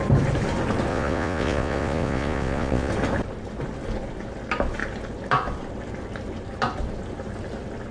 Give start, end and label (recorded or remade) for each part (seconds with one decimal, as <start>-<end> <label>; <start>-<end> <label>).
0.0-0.9 recorded; 0.9-2.9 remade; 2.9-7.9 recorded